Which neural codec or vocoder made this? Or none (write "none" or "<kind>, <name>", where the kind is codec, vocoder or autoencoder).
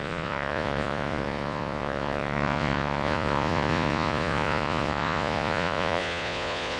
vocoder, Vocos